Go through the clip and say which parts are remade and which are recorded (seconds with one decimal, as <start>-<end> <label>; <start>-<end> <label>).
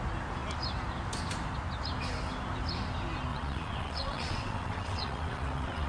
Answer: 0.0-3.3 recorded; 3.3-5.9 remade